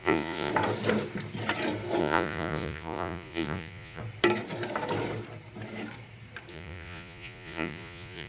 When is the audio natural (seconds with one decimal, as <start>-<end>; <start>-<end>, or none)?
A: 0.5-2.0; 4.0-6.5